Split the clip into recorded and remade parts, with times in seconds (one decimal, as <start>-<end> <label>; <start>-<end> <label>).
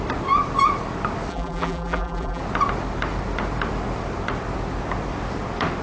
0.0-1.3 recorded; 1.3-2.4 remade; 2.4-5.8 recorded